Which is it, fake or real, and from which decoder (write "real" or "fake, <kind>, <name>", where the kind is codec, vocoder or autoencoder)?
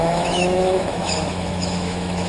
fake, autoencoder, DAC-VAE